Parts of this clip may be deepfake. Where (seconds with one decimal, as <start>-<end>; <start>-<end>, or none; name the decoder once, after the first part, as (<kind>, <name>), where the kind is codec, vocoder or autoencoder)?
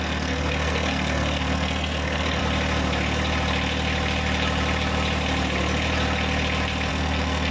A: 0.0-2.4 (codec, SNAC); 6.9-7.5